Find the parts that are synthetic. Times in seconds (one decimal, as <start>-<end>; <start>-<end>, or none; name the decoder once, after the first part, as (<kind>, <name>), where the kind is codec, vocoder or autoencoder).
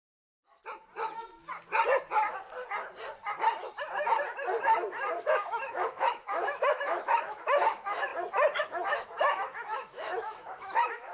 0.0-0.4 (autoencoder, DAC-VAE); 5.2-8.1; 8.6-11.1